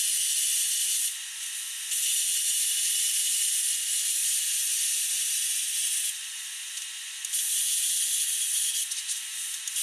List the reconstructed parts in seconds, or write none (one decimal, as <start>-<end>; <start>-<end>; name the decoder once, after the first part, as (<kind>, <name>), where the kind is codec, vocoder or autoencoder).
none